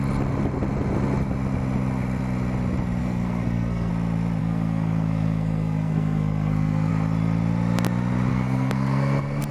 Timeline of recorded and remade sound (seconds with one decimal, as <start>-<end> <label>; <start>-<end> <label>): 0.0-3.0 recorded; 3.0-3.9 remade; 3.9-4.4 recorded; 4.4-6.9 remade; 6.9-8.3 recorded; 8.3-9.5 remade